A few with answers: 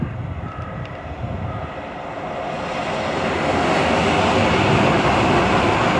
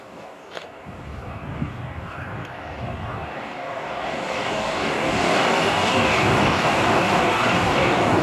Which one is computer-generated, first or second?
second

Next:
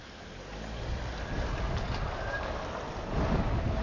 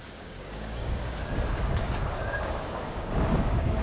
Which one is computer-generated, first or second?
second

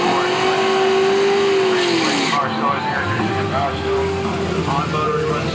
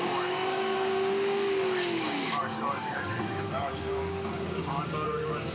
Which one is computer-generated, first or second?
second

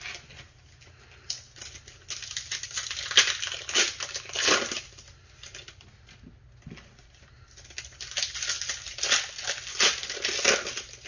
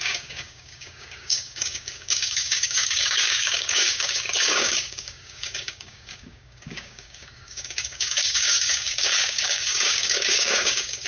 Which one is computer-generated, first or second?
second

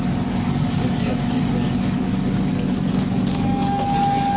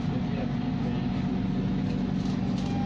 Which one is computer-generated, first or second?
first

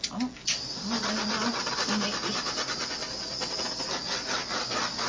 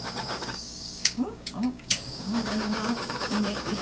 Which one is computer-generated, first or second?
second